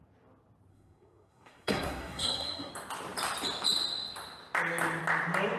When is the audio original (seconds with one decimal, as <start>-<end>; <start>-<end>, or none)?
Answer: 0.0-0.7; 2.7-5.6